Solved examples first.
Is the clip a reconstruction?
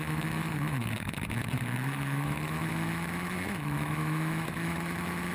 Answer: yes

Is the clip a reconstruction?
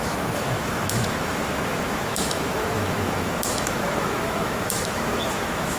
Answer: yes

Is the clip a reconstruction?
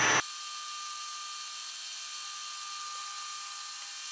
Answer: no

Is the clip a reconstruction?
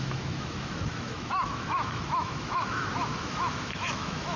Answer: yes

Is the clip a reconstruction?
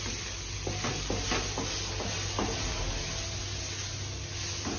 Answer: no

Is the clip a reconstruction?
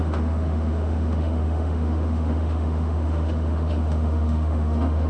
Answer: yes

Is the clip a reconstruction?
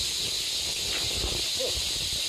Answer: no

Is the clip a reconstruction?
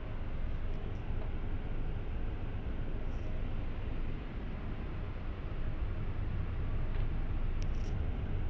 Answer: no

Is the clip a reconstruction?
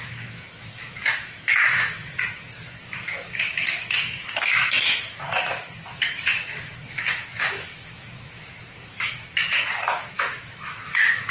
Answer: yes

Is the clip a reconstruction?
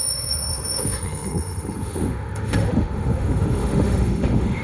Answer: yes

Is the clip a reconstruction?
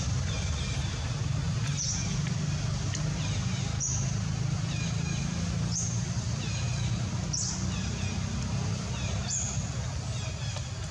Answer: no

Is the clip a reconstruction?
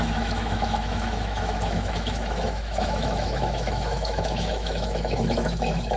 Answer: yes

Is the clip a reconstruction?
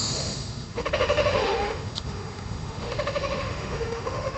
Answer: yes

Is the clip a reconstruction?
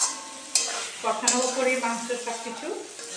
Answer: no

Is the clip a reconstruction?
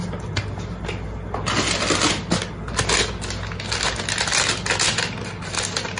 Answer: no